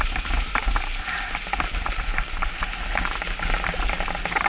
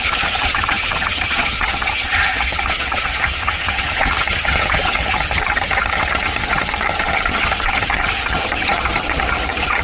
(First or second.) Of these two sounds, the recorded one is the first